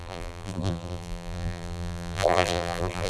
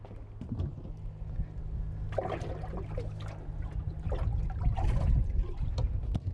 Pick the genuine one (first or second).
second